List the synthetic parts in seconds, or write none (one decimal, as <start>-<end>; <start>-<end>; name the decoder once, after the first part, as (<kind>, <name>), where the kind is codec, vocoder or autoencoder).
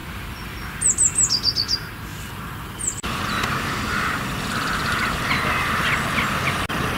0.0-0.8 (vocoder, BigVGAN v2); 2.1-5.2